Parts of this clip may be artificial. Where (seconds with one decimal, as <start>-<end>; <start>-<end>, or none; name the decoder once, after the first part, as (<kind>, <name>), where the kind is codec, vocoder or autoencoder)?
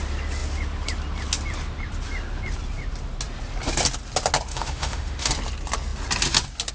4.5-5.3 (autoencoder, DAC-VAE)